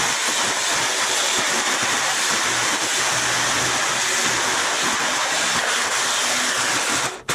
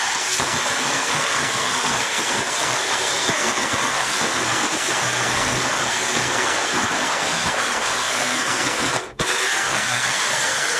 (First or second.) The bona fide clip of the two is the first